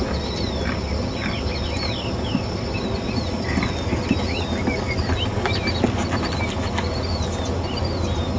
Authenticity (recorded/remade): recorded